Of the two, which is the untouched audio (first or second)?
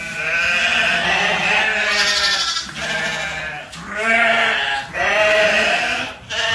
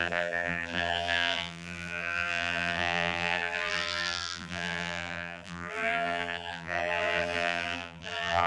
first